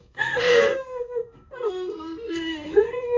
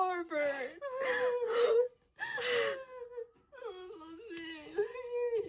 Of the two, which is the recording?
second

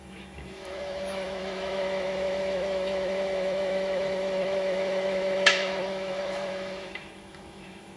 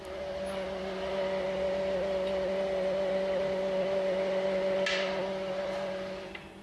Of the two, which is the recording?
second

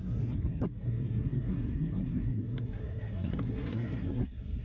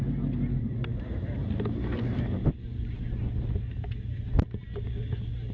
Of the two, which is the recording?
second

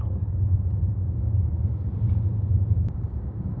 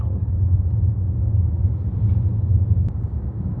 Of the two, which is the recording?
second